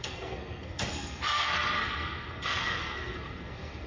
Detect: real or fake fake